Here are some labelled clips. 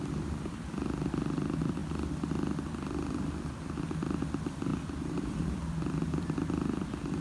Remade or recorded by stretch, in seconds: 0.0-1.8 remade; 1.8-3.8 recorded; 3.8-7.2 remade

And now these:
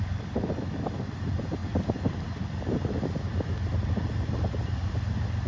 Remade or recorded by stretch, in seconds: 0.0-5.5 recorded